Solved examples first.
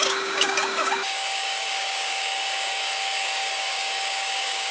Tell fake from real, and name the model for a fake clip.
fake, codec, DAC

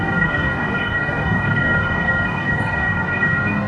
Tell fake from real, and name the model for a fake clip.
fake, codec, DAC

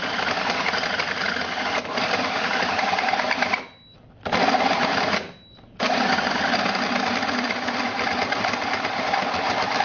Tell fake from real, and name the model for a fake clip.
real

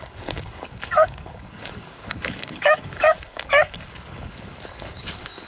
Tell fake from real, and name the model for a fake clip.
fake, codec, DAC